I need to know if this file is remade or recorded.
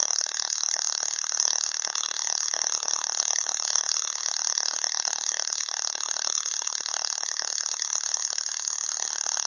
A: remade